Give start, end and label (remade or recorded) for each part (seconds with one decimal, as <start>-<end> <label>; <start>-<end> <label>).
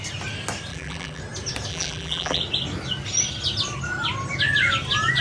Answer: 0.0-0.7 recorded; 0.7-1.2 remade; 1.2-1.7 recorded; 1.7-2.4 remade; 2.4-5.2 recorded